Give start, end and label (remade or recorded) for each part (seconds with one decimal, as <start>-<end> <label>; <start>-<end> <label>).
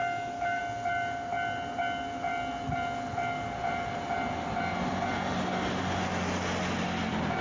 0.0-0.6 remade; 0.6-7.4 recorded